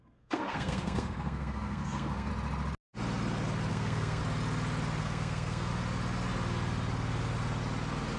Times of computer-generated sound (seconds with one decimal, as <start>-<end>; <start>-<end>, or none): 0.0-2.3; 3.7-4.2; 5.0-5.7